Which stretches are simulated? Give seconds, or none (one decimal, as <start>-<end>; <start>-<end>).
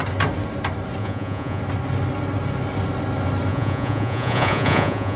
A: 1.0-1.6; 3.5-5.2